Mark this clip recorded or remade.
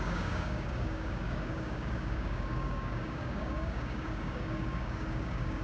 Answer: remade